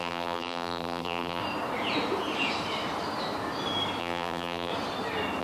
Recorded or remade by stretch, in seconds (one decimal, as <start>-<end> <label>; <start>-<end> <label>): 0.0-1.4 remade; 1.4-4.0 recorded; 4.0-4.7 remade; 4.7-5.4 recorded